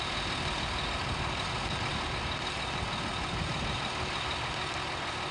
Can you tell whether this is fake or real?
real